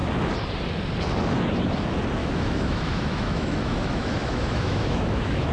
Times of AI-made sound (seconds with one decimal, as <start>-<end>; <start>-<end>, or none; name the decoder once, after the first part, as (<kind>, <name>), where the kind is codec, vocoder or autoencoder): 2.2-5.5 (autoencoder, DAC-VAE)